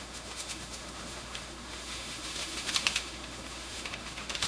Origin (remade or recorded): remade